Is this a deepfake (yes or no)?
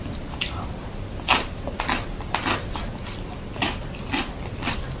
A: no